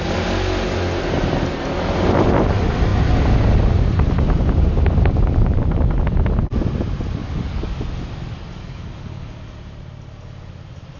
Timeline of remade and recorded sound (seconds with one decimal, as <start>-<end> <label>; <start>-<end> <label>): 0.0-7.2 recorded; 7.2-7.8 remade; 7.8-8.6 recorded; 8.6-9.5 remade; 9.5-11.0 recorded